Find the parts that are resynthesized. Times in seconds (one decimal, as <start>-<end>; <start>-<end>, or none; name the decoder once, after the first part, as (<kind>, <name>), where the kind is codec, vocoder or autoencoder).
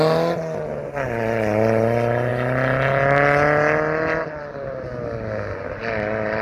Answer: none